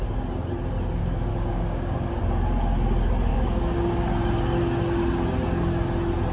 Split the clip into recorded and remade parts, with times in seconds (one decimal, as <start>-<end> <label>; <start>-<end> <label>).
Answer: 0.0-1.0 recorded; 1.0-2.2 remade; 2.2-3.3 recorded; 3.3-4.1 remade; 4.1-6.3 recorded